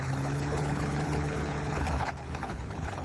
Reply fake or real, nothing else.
fake